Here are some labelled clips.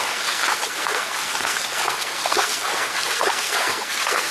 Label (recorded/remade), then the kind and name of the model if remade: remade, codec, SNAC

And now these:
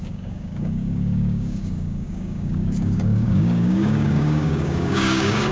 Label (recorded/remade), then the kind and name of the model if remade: remade, codec, DAC